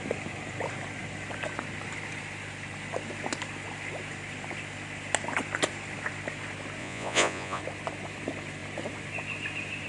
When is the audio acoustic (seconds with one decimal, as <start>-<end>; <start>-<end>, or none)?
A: 0.0-6.8; 7.6-9.9